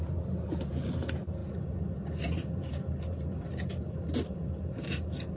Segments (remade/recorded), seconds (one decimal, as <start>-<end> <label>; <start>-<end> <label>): 0.0-5.4 recorded